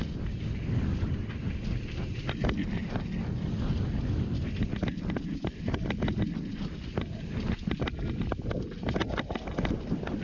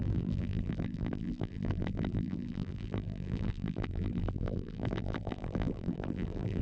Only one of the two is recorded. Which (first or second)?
first